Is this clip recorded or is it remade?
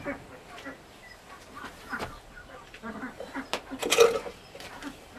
recorded